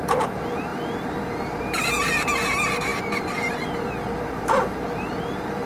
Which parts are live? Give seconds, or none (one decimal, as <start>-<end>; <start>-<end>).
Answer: none